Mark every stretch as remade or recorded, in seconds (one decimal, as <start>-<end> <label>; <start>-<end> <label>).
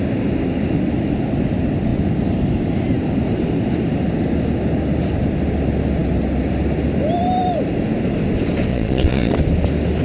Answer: 0.0-8.7 recorded; 8.7-9.3 remade; 9.3-10.0 recorded